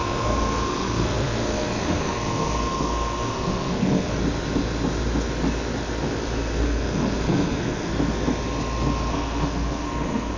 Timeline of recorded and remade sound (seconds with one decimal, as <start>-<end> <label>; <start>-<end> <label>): 0.0-4.1 remade; 4.1-6.6 recorded; 6.6-7.9 remade; 7.9-9.1 recorded; 9.1-10.4 remade